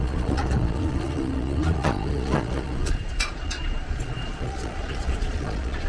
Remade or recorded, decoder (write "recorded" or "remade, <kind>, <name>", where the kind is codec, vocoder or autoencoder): remade, vocoder, Vocos